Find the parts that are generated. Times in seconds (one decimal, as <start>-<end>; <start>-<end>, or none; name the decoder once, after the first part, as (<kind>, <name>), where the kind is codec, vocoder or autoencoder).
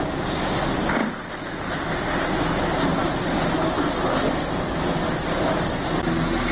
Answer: none